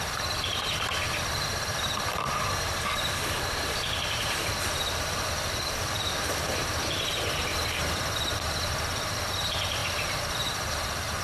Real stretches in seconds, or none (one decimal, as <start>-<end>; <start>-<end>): 0.0-11.2